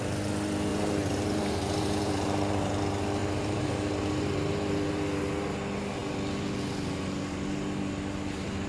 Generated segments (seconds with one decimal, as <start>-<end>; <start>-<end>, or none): 0.7-2.7; 3.2-3.7